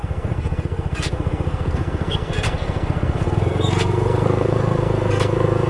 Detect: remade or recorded remade